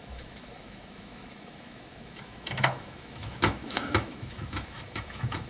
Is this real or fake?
fake